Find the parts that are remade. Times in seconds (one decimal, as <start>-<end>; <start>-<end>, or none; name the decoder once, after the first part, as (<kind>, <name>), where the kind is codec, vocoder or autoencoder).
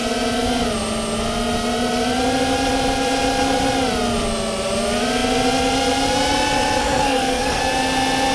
6.8-7.6 (codec, SNAC)